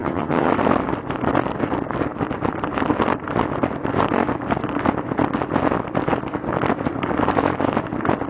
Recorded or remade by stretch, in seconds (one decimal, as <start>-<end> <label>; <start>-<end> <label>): 0.0-0.5 remade; 0.5-8.3 recorded